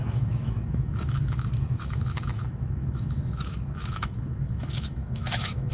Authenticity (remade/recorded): remade